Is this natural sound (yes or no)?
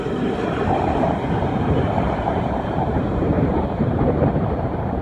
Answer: no